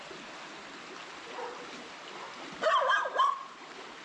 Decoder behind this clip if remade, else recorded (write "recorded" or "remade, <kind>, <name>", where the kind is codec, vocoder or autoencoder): recorded